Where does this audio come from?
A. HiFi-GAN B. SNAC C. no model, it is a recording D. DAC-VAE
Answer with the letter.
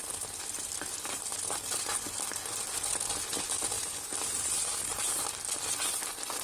C